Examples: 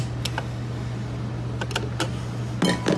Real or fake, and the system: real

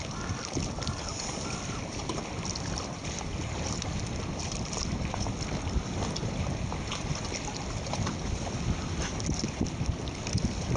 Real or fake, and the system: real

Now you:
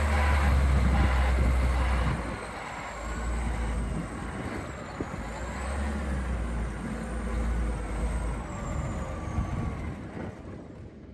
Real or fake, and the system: real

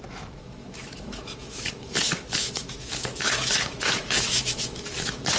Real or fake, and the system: fake, autoencoder, DAC-VAE